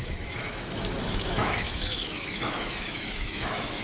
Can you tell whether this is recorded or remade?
remade